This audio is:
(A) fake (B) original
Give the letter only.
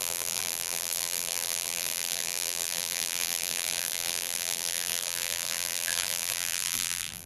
A